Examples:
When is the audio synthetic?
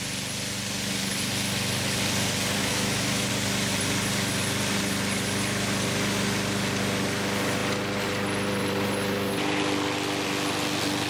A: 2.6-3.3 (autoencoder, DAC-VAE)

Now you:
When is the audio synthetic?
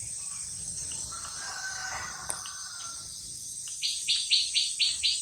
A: none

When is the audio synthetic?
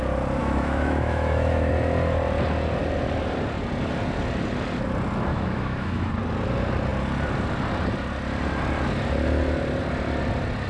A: 0.4-1.7 (autoencoder, DAC-VAE); 5.3-6.1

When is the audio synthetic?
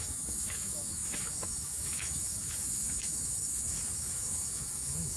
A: 0.0-5.2 (autoencoder, DAC-VAE)